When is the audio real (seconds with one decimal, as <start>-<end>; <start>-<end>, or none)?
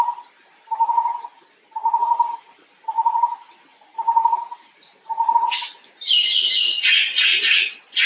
0.0-2.0; 2.6-3.7; 5.3-8.1